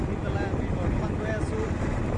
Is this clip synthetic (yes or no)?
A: no